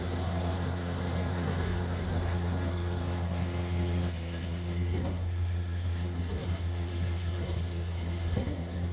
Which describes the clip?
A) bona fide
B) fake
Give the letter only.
B